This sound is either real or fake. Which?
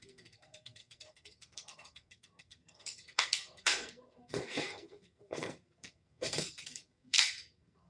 fake